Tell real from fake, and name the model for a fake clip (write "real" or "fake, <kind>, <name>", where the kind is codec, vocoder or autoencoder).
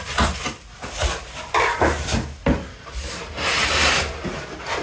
real